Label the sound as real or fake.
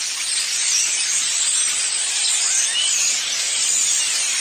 real